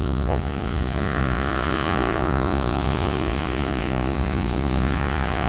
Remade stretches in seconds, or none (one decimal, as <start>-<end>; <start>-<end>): 0.0-5.5